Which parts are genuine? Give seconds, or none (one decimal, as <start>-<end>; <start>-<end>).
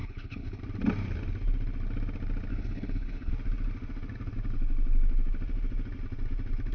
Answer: 0.6-2.5; 3.3-6.7